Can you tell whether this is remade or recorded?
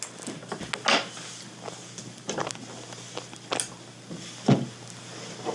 recorded